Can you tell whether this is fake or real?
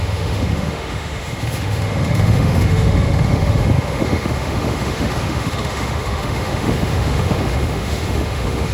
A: fake